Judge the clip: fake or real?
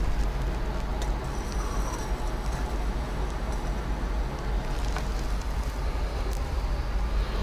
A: real